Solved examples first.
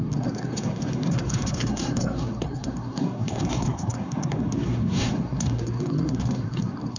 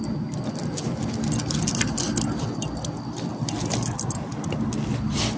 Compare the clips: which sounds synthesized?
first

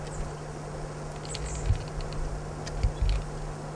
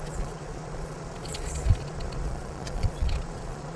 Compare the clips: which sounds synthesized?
second